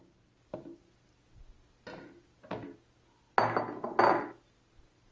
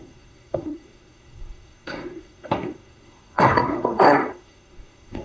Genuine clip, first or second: first